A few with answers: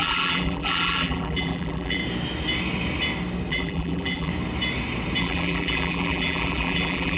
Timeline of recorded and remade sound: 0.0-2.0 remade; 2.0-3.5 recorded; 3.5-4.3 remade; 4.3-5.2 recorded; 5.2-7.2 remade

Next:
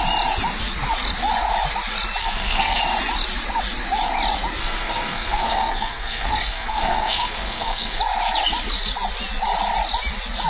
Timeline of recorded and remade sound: 0.0-2.2 recorded; 2.2-2.8 remade; 2.8-4.6 recorded; 4.6-8.0 remade; 8.0-10.5 recorded